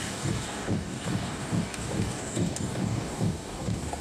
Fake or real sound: fake